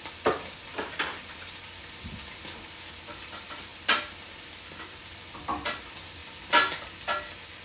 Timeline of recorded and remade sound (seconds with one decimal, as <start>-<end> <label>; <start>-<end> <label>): 0.0-0.7 recorded; 0.7-1.3 remade; 1.3-7.6 recorded